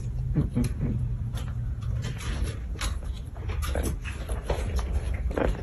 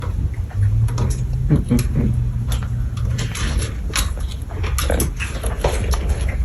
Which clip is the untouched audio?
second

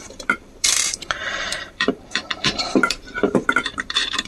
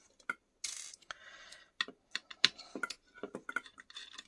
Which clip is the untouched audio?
second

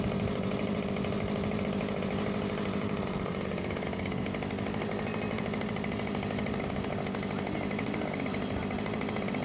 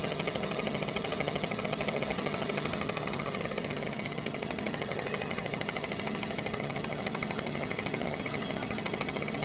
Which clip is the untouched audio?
first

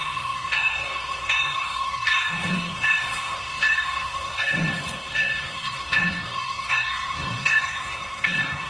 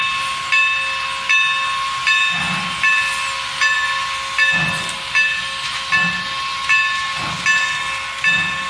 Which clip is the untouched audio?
second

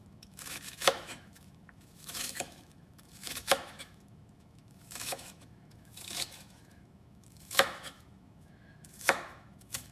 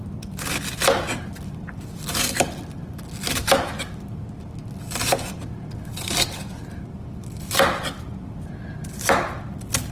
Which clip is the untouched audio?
second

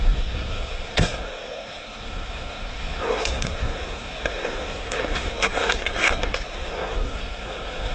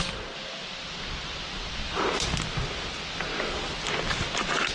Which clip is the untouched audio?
second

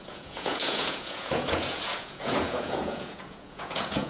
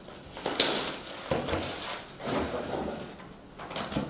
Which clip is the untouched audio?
second